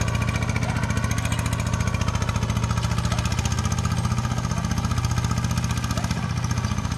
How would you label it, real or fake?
real